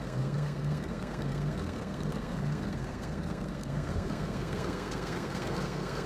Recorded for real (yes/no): no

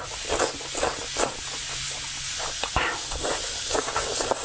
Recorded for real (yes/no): yes